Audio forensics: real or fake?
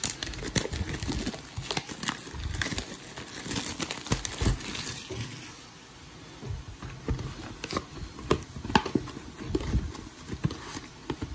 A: real